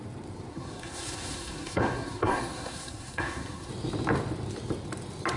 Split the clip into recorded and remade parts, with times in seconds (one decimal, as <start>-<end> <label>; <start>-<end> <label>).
0.0-0.5 recorded; 0.5-3.7 remade; 3.7-5.4 recorded